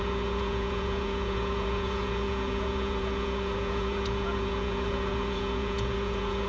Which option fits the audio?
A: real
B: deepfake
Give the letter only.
B